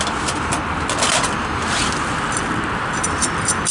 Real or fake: real